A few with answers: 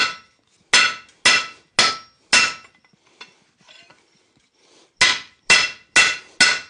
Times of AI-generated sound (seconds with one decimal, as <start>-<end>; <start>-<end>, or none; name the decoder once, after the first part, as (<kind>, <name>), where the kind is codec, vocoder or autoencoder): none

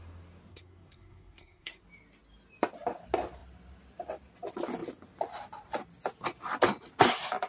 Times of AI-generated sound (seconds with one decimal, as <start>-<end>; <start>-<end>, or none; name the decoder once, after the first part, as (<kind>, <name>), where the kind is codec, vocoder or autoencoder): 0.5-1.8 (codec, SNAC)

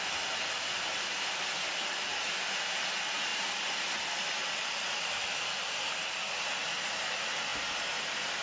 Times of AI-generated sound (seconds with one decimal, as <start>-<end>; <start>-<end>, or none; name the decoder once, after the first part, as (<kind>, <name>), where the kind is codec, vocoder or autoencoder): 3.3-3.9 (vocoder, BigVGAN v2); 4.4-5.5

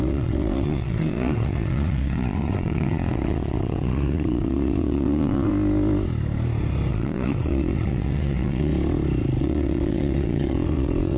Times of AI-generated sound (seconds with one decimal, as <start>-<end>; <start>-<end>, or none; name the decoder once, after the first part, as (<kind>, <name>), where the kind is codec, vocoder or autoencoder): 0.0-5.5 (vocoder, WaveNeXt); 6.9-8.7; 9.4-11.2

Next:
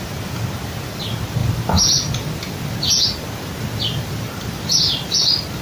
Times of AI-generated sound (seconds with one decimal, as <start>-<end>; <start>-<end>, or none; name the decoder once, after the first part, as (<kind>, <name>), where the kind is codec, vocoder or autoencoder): none

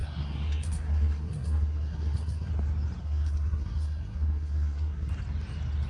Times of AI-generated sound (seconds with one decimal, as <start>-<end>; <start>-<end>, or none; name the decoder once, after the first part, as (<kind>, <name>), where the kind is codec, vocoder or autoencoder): 0.0-2.5 (codec, SNAC); 3.0-5.1

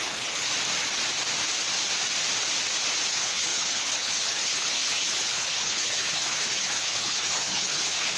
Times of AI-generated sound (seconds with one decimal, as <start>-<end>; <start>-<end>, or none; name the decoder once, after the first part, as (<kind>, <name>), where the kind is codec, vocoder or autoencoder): 0.0-0.5 (codec, HILCodec); 3.1-8.2

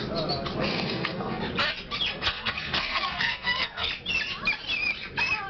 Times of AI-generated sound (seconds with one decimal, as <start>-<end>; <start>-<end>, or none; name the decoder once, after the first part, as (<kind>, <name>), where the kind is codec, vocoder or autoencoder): 0.7-1.4 (codec, SNAC); 2.1-3.9